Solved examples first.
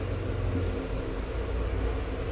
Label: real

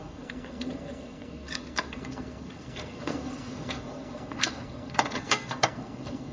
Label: fake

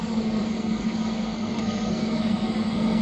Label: fake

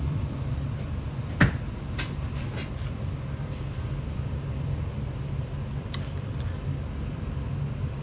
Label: fake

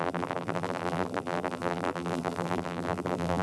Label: fake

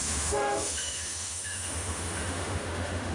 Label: fake